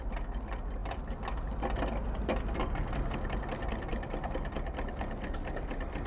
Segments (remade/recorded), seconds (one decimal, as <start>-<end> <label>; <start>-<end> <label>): 0.0-6.1 recorded